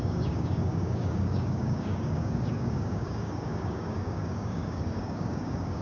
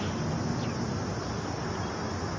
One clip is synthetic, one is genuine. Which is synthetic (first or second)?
first